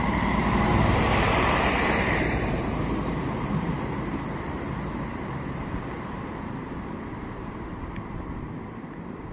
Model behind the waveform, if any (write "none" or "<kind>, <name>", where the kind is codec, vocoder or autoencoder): vocoder, BigVGAN v2